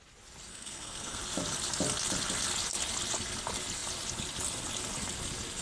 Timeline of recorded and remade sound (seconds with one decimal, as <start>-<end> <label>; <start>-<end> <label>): 0.0-0.5 recorded; 0.5-1.2 remade; 1.2-5.6 recorded